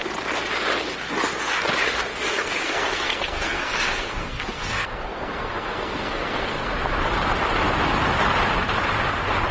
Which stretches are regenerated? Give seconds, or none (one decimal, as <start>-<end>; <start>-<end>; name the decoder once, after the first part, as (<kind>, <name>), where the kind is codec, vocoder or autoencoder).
2.1-6.7 (codec, SNAC)